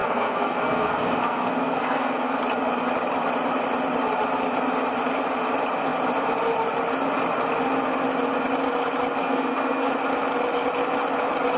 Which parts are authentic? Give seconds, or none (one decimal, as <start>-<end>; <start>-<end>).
2.4-9.2; 9.9-11.6